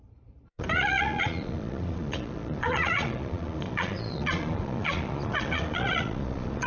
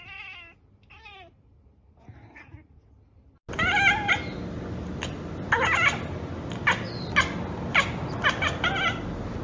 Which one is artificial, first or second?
first